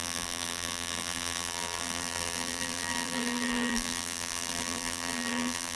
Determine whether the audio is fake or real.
fake